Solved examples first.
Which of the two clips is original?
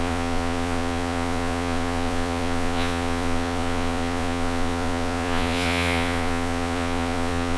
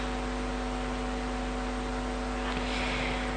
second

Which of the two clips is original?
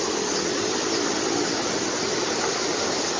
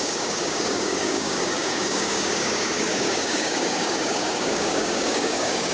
first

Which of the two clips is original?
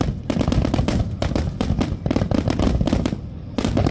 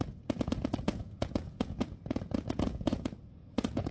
first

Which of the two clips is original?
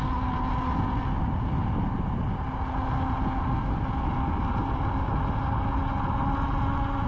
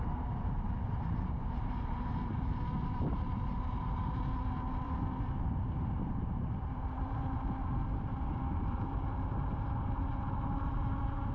first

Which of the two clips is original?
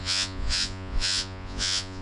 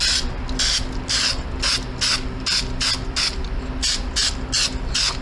second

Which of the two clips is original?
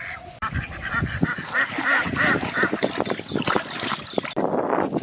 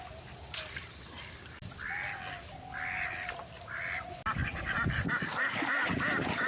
second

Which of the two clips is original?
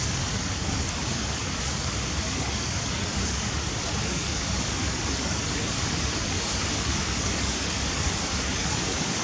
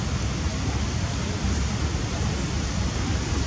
second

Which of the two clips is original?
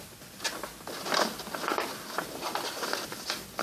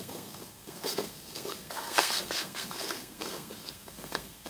first